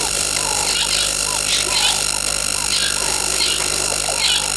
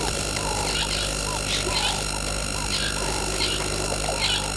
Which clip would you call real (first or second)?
first